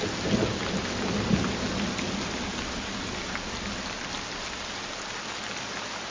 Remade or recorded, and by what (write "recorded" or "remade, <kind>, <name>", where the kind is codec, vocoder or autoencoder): recorded